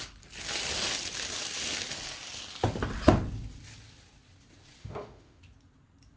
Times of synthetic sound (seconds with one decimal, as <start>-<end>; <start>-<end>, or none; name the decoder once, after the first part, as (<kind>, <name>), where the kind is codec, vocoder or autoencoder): 4.8-5.4 (autoencoder, DAC-VAE)